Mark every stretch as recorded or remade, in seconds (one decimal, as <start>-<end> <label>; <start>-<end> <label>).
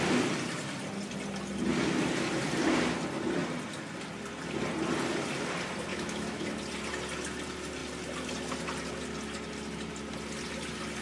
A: 0.0-5.9 recorded; 5.9-6.6 remade; 6.6-11.0 recorded